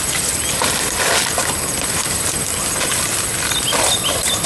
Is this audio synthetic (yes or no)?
no